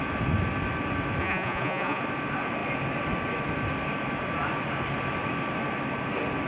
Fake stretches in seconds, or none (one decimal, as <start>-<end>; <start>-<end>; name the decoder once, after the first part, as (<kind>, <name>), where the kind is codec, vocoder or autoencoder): 1.2-2.0 (vocoder, Vocos)